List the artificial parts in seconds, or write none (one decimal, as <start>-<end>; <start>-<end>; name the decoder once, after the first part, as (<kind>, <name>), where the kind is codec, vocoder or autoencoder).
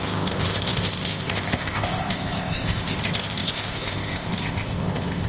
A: 0.0-5.3 (codec, ZipCodec)